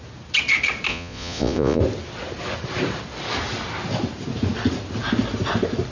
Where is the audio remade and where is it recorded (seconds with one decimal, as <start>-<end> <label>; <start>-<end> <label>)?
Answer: 0.0-0.9 recorded; 0.9-1.8 remade; 1.8-5.9 recorded